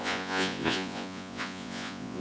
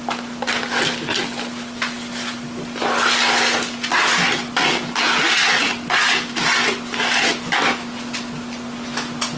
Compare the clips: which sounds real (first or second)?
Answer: second